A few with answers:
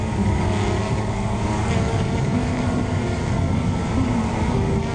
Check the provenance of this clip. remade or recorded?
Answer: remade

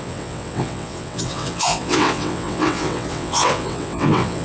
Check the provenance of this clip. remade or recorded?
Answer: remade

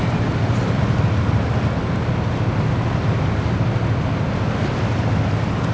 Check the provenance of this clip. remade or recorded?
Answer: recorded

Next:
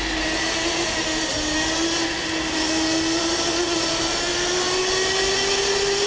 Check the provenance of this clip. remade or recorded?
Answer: recorded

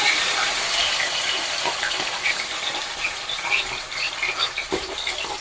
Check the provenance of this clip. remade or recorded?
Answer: remade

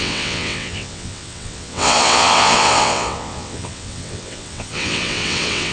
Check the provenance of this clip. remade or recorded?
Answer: remade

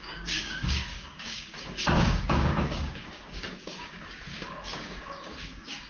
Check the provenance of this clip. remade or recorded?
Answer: remade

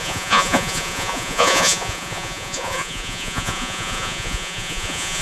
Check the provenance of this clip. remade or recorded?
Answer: remade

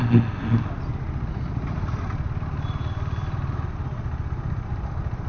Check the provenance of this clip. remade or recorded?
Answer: recorded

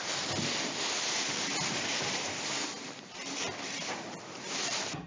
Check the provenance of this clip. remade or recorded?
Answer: remade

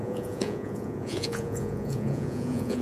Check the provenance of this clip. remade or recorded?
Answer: remade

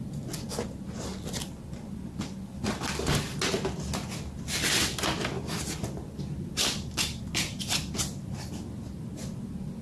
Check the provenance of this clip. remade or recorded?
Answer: recorded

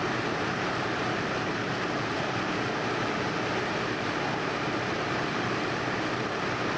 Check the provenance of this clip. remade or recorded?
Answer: remade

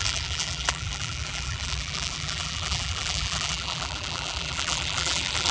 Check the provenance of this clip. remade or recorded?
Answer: remade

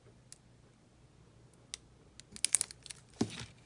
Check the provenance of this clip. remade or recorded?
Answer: recorded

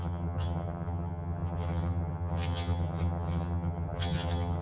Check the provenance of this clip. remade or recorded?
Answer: remade